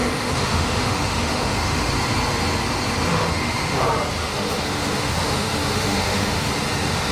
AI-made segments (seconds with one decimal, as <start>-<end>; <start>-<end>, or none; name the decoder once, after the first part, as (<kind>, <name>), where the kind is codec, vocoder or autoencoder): 0.0-1.9 (autoencoder, DAC-VAE); 3.1-3.8; 4.2-6.5

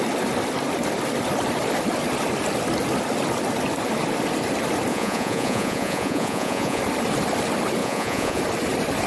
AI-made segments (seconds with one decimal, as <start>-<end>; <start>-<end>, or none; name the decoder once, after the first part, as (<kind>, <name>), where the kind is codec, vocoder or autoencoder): 4.9-6.8 (vocoder, Vocos); 7.8-8.4

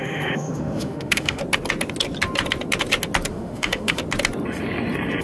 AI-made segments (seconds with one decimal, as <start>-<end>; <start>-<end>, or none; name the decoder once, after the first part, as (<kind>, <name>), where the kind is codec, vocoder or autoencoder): 0.0-1.4 (autoencoder, DAC-VAE); 3.3-4.0

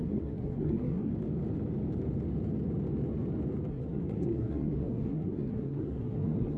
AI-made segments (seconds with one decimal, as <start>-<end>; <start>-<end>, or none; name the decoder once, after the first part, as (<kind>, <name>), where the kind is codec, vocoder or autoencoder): 0.0-1.1 (codec, SNAC); 3.7-6.6

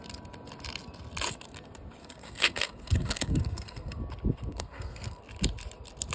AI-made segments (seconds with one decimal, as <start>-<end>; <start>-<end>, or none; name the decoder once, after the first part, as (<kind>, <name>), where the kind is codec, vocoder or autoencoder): 2.0-4.0 (codec, SNAC); 4.5-5.2